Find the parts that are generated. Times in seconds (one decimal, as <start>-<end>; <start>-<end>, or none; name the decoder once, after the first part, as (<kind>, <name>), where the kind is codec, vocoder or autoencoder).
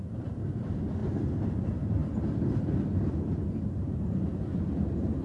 none